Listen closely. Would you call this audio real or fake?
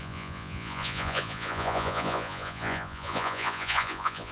fake